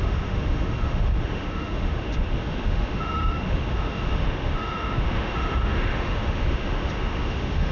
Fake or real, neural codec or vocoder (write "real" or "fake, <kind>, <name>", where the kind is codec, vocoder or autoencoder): fake, autoencoder, DAC-VAE